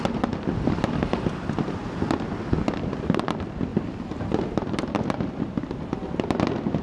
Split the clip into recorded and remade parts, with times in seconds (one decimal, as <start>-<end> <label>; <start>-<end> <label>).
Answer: 0.0-6.8 remade